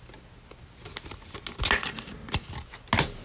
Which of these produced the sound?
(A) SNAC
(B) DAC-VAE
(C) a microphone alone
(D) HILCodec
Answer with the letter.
C